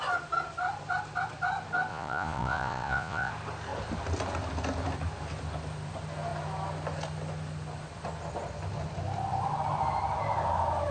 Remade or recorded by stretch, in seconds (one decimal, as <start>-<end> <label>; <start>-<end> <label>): 0.0-1.9 recorded; 1.9-3.3 remade; 3.3-10.9 recorded